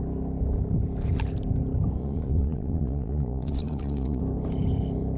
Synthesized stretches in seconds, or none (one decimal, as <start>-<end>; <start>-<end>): 2.0-4.2